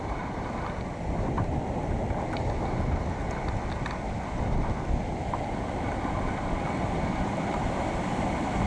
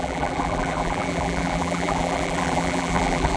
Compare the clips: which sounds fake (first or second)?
second